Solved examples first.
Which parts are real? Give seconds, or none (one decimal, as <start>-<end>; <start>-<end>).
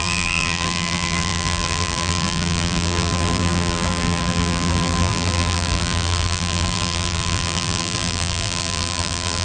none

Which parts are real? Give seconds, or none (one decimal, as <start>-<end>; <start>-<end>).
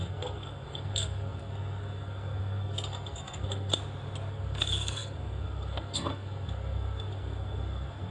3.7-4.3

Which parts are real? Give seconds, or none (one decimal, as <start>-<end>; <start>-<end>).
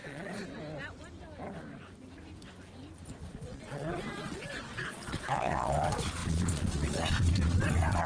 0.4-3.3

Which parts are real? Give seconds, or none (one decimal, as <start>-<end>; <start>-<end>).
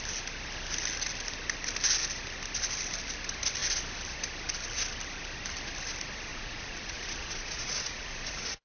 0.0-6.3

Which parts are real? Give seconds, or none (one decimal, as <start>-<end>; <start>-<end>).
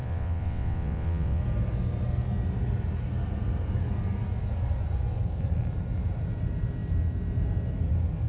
1.4-8.3